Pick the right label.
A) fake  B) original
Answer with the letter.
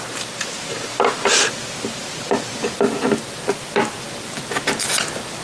B